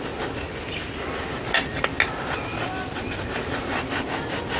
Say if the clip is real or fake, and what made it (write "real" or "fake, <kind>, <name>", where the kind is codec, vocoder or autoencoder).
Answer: real